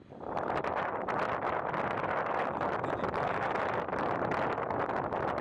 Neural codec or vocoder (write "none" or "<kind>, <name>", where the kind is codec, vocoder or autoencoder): none